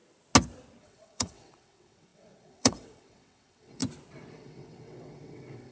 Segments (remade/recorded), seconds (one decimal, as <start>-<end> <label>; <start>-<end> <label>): 0.0-0.8 recorded; 0.8-3.8 remade; 3.8-4.3 recorded; 4.3-5.7 remade